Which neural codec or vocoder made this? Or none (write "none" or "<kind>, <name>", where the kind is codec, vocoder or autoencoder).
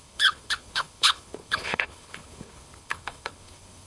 codec, HILCodec